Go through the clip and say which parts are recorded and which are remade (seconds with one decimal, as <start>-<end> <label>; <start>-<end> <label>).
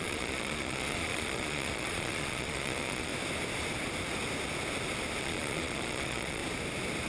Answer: 0.0-3.1 remade; 3.1-5.2 recorded; 5.2-6.4 remade; 6.4-7.1 recorded